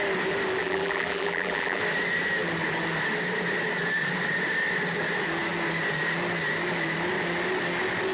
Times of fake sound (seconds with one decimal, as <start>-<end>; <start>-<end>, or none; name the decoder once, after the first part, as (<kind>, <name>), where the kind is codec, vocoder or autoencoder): 0.6-1.8 (vocoder, BigVGAN v2)